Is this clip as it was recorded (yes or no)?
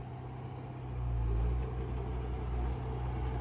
yes